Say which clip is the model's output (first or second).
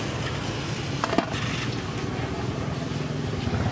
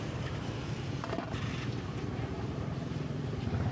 second